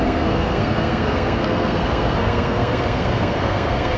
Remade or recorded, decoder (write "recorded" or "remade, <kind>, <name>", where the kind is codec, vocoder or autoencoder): remade, codec, SNAC